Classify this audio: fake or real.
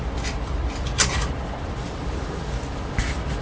real